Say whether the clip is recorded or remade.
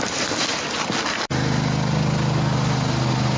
recorded